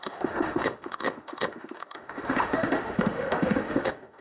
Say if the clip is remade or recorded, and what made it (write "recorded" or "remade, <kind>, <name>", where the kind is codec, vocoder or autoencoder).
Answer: remade, autoencoder, DAC-VAE